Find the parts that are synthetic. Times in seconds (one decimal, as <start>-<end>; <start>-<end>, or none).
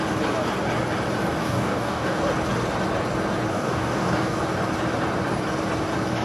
1.4-2.2; 3.5-4.4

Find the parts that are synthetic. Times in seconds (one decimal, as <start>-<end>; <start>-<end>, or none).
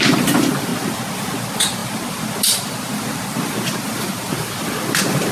0.0-0.7; 1.4-5.3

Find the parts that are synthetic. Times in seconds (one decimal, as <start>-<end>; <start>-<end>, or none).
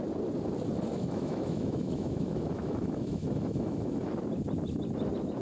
0.9-4.1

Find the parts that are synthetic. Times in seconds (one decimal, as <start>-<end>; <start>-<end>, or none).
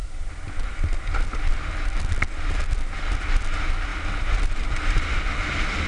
1.5-2.6; 3.9-5.5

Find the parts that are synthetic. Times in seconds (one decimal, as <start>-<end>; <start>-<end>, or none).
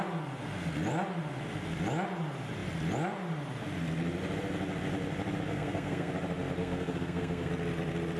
5.5-6.1; 6.6-7.5